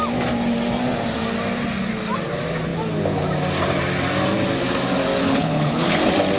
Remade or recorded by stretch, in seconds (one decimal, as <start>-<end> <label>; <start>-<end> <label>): 0.0-5.2 recorded; 5.2-6.0 remade; 6.0-6.4 recorded